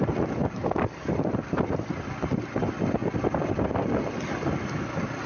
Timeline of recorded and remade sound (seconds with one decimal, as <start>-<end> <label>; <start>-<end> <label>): 0.0-5.3 recorded